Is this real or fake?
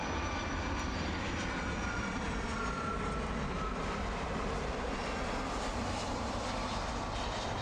real